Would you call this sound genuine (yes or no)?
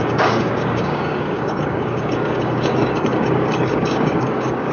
no